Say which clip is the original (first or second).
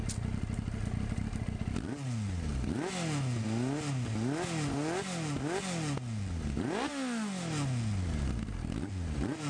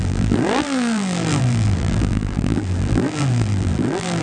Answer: first